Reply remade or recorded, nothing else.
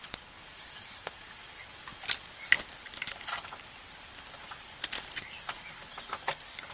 recorded